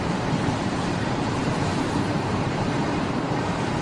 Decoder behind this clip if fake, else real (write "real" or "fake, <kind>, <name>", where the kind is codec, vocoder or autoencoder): fake, vocoder, BigVGAN v2